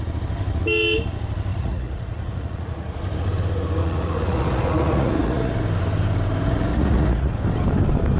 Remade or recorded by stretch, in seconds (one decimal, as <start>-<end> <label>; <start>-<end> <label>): 0.0-1.5 recorded; 1.5-3.0 remade; 3.0-3.8 recorded; 3.8-5.5 remade; 5.5-6.7 recorded; 6.7-7.4 remade; 7.4-8.2 recorded